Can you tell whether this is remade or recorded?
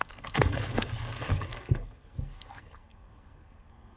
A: remade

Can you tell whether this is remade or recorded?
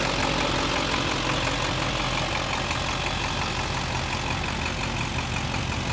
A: recorded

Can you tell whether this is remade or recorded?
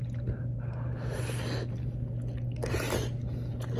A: recorded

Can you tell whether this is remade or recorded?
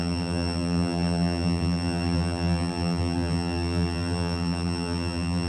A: remade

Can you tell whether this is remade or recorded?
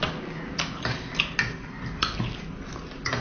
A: recorded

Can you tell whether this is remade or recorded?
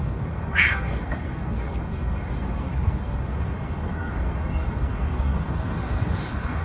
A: remade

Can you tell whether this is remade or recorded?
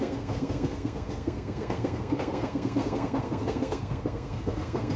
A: remade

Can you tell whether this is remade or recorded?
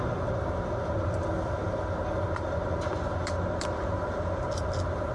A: recorded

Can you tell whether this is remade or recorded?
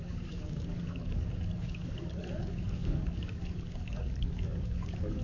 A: remade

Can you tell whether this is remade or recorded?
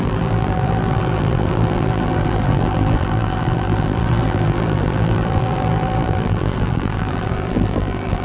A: remade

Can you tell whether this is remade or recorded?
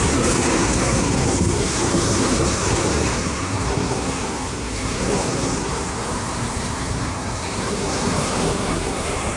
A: remade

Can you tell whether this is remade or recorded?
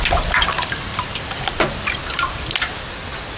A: recorded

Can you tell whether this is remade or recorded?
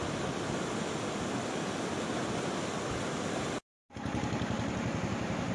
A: recorded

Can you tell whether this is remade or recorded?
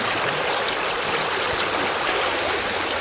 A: recorded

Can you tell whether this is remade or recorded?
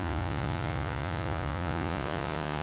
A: remade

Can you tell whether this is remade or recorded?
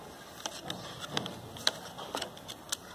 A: recorded